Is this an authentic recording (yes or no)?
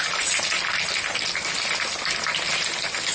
yes